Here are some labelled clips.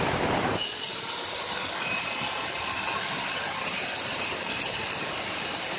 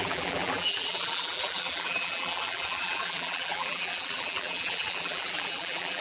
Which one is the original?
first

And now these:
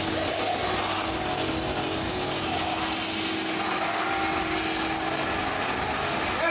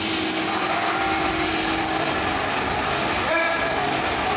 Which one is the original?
first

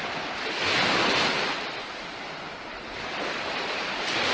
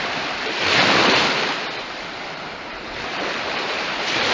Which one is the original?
first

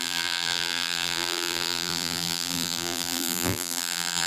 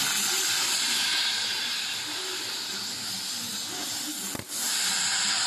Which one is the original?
second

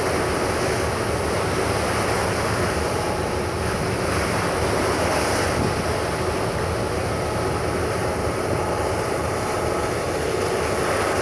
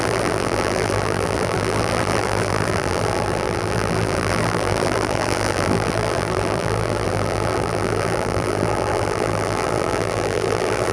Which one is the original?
first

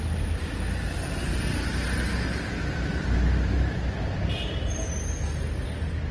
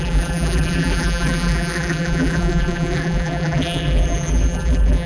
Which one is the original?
first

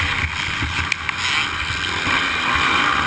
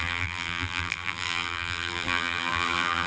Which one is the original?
first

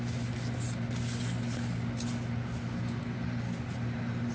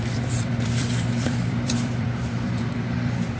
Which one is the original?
first